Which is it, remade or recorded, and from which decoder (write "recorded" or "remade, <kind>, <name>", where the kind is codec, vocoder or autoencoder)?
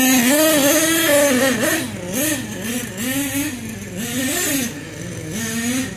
recorded